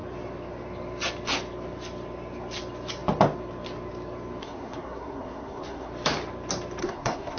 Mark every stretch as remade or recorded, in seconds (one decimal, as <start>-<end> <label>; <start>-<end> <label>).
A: 0.0-4.4 recorded; 4.4-5.9 remade; 5.9-6.8 recorded; 6.8-7.4 remade